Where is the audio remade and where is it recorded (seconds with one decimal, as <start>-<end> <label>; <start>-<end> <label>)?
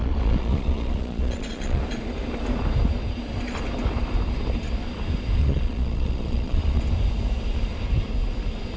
0.0-1.8 remade; 1.8-5.4 recorded; 5.4-6.8 remade; 6.8-8.8 recorded